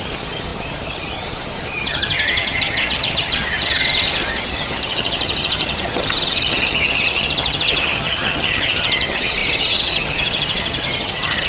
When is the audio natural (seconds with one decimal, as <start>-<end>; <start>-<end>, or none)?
none

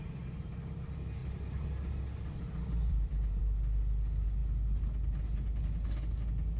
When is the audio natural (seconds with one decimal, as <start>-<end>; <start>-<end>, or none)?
0.0-1.2; 3.4-6.6